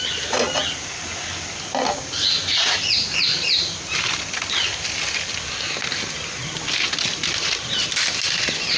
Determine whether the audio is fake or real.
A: real